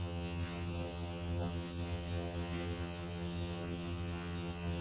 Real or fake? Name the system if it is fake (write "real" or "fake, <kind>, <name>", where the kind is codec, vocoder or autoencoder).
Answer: fake, vocoder, HiFi-GAN